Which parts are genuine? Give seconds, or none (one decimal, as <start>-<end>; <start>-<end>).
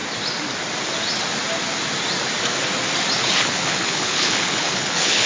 0.0-3.2